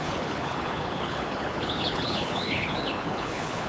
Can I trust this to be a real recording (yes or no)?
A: no